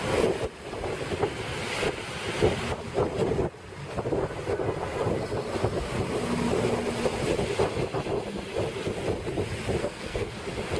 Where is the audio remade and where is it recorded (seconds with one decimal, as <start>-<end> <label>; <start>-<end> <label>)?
0.0-9.8 recorded; 9.8-10.3 remade; 10.3-10.8 recorded